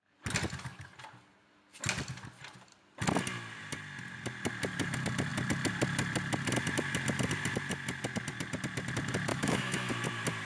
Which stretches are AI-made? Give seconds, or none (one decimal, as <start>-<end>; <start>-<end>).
9.3-9.9